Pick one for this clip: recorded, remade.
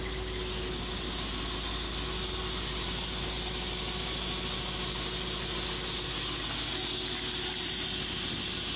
recorded